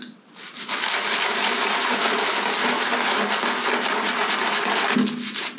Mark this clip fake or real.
real